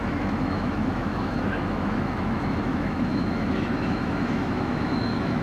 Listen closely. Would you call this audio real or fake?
fake